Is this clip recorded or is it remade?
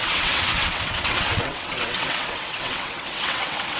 remade